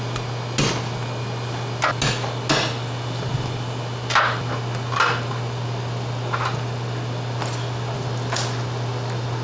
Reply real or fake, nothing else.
real